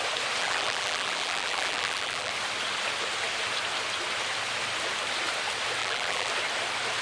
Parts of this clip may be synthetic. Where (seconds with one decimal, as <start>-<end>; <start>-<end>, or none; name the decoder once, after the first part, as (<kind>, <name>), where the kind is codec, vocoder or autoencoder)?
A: 0.4-2.3 (vocoder, BigVGAN v2); 5.8-6.3